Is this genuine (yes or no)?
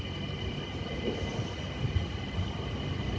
yes